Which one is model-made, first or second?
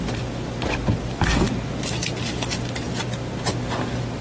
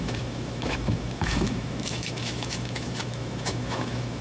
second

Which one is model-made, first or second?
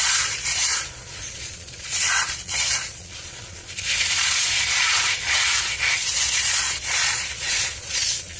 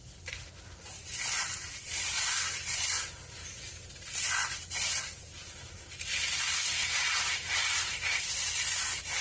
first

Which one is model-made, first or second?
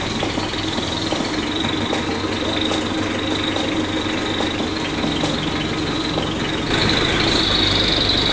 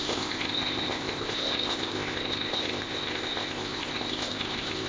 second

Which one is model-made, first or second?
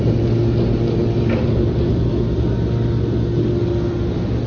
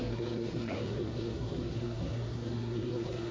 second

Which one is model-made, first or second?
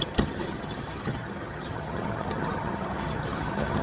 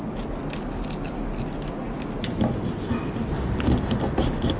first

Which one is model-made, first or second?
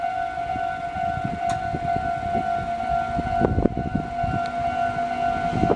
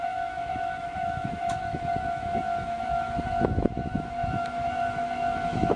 second